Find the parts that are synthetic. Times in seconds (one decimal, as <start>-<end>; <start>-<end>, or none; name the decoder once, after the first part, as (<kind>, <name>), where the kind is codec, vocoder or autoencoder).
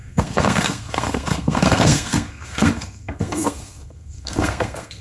0.0-5.0 (codec, SNAC)